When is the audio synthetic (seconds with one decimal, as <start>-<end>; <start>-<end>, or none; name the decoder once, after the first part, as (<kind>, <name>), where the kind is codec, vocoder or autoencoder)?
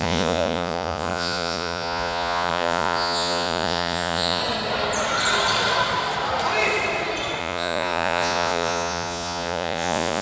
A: 0.0-4.4 (vocoder, Vocos); 7.4-10.2